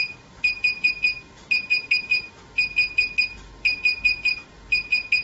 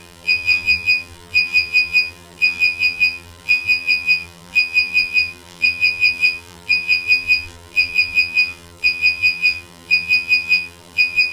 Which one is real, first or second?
first